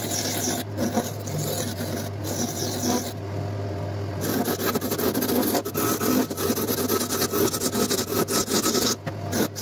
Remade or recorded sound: recorded